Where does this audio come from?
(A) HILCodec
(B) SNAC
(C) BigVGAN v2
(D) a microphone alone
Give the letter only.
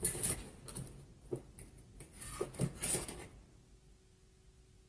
D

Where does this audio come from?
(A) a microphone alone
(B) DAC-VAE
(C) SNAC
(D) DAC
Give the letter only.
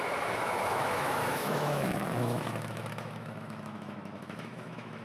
B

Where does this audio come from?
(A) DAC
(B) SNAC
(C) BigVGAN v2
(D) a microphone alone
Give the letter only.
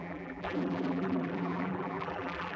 C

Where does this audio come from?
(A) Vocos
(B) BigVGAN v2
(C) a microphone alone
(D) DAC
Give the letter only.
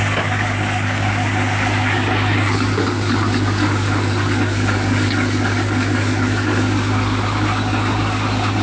D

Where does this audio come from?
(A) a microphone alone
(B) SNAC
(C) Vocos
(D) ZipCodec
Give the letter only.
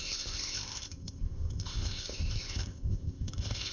D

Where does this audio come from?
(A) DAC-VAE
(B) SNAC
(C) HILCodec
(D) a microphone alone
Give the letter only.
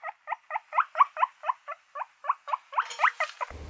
D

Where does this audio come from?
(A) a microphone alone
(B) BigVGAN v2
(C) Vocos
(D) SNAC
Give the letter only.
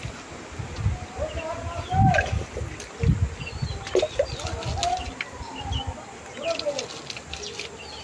A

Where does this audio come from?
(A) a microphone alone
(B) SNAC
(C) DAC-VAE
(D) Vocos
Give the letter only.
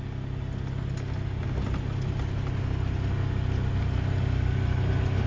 A